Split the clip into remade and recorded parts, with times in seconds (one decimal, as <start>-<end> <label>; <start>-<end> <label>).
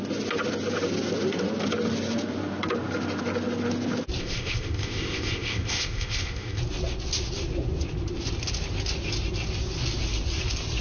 0.0-4.2 recorded; 4.2-6.6 remade; 6.6-10.8 recorded